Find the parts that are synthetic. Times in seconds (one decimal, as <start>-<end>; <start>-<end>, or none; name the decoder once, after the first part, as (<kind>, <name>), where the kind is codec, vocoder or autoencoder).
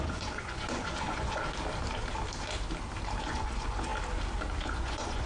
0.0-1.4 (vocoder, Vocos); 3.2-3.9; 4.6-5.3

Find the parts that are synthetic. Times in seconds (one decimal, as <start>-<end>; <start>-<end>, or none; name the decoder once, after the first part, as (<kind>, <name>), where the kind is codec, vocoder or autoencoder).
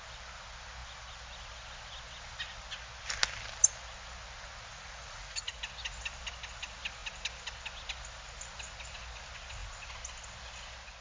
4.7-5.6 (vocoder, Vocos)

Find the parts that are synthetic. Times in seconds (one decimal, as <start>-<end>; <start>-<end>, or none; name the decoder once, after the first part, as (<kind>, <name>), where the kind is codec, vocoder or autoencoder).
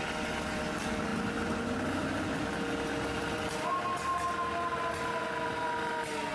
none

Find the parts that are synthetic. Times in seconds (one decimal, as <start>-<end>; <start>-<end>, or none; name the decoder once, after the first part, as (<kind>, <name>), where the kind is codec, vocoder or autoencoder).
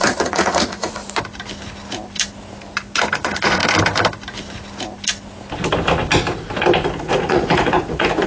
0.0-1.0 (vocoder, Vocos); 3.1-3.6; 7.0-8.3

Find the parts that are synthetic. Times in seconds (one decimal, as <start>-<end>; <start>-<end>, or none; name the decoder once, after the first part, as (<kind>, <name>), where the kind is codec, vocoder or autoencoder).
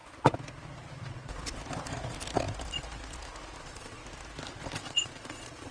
1.1-1.6 (vocoder, Vocos); 3.6-4.0; 4.8-5.7